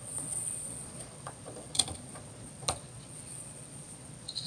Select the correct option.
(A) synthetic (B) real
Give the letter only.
A